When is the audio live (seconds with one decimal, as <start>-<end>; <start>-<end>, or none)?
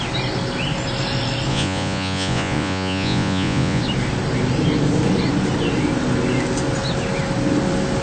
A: 0.0-1.5; 3.8-8.0